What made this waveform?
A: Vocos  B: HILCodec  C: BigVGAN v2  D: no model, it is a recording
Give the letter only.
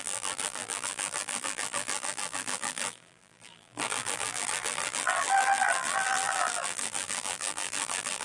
C